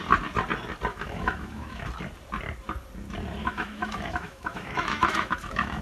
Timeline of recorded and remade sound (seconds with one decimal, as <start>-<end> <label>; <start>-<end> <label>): 0.0-0.9 recorded; 0.9-1.9 remade; 1.9-3.4 recorded; 3.4-5.8 remade